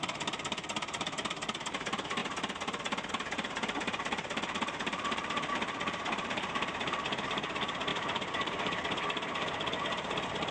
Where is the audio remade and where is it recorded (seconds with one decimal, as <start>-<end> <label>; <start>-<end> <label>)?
0.0-2.2 remade; 2.2-3.1 recorded; 3.1-10.5 remade